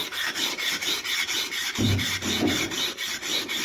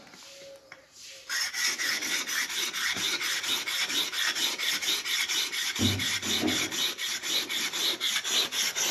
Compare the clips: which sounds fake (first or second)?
first